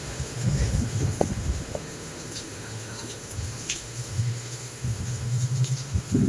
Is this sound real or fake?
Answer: fake